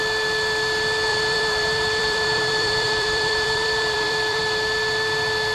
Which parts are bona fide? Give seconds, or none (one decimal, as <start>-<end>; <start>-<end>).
0.0-1.1; 4.4-5.5